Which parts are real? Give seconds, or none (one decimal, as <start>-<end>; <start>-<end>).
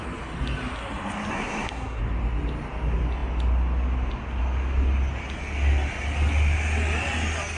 0.0-1.3; 2.0-7.6